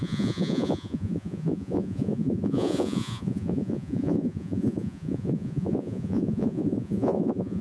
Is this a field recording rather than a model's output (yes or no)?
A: no